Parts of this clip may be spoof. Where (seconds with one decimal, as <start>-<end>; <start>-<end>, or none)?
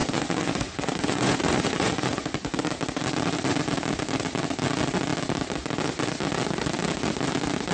0.0-2.7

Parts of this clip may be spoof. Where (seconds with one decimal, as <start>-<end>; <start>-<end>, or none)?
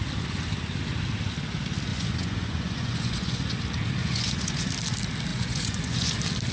1.9-3.5; 4.0-4.7; 5.3-6.1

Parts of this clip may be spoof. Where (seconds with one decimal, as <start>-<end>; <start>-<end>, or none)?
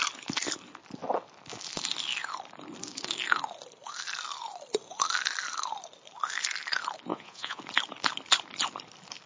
7.1-7.6